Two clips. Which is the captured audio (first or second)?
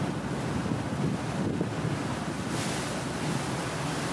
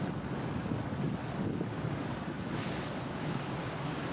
first